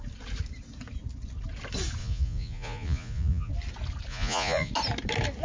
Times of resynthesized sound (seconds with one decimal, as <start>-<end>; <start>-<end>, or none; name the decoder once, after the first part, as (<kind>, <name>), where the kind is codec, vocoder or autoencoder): 2.0-3.5 (vocoder, Vocos); 4.1-4.7

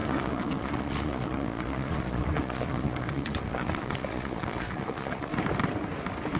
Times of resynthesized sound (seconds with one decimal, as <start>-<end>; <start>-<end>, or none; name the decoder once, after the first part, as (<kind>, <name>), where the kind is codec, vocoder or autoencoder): 0.0-5.3 (vocoder, Vocos)

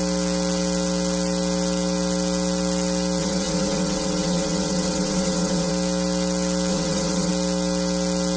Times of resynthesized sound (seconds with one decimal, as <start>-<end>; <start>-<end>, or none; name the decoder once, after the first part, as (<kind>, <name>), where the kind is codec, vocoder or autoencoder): 3.2-5.7 (vocoder, WaveNeXt); 6.7-7.3

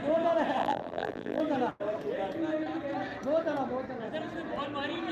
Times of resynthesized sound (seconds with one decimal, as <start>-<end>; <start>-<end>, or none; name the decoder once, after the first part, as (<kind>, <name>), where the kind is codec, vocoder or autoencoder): 0.6-1.4 (vocoder, BigVGAN v2)

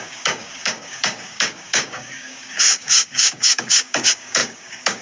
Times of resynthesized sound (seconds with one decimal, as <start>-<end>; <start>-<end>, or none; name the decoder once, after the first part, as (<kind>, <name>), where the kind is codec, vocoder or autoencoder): 0.0-5.0 (codec, DAC)

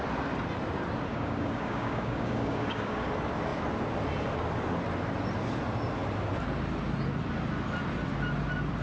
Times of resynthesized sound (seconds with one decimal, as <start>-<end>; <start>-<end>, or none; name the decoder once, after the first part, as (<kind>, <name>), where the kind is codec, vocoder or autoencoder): 1.1-3.1 (codec, DAC)

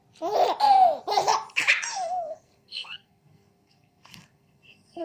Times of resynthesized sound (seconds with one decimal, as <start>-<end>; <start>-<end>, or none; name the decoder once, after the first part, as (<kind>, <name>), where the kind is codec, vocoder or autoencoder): 1.9-5.0 (codec, SNAC)